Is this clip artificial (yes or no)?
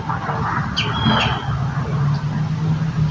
no